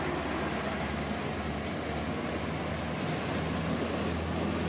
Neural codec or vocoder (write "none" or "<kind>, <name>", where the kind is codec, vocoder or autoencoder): none